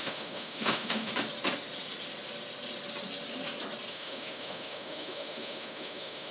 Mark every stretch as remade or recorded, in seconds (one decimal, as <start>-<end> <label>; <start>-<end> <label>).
0.0-1.1 remade; 1.1-3.9 recorded; 3.9-6.3 remade